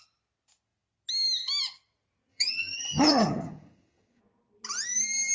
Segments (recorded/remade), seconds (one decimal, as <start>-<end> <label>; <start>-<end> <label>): 0.0-2.3 recorded; 2.3-4.2 remade; 4.2-5.3 recorded